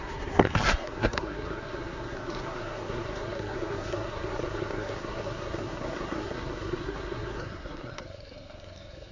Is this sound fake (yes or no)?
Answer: yes